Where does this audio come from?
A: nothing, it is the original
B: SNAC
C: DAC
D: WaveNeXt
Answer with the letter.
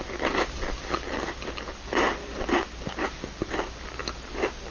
A